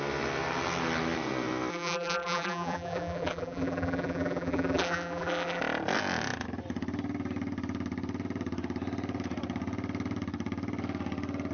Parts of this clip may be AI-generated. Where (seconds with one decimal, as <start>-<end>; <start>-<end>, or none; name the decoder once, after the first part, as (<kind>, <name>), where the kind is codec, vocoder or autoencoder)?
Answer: 1.7-5.6 (vocoder, BigVGAN v2)